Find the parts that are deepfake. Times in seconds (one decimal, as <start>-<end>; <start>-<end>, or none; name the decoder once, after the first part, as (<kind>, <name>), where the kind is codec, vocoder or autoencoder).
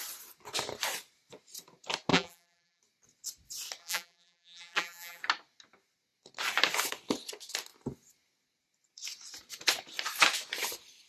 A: 2.1-2.8 (vocoder, BigVGAN v2); 3.8-5.2